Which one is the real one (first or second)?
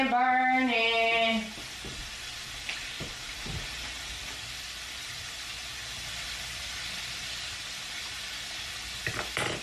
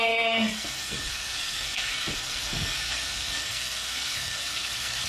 first